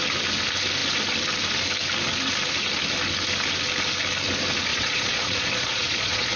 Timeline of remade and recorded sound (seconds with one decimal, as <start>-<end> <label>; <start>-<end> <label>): 0.0-4.7 recorded; 4.7-6.4 remade